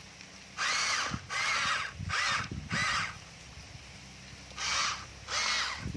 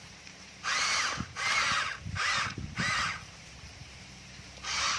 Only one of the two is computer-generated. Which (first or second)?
second